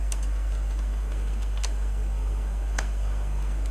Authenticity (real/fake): fake